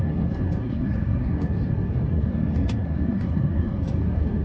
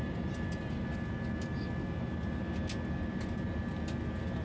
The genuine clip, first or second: second